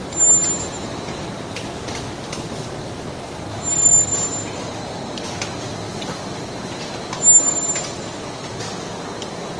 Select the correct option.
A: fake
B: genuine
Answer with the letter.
B